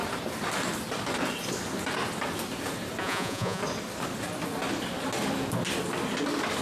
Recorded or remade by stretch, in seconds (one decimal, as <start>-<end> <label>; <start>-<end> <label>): 0.0-3.0 recorded; 3.0-3.6 remade; 3.6-6.6 recorded